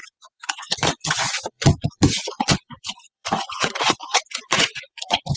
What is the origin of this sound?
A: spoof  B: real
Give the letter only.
A